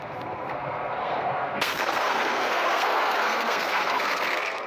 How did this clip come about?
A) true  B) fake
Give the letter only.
B